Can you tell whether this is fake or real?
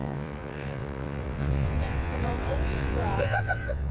fake